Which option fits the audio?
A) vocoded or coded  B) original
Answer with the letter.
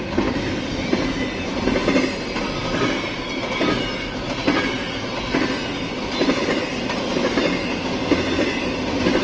B